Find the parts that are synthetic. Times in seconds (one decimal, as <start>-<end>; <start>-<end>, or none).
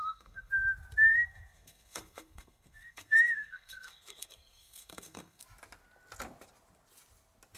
0.0-0.5; 1.1-5.4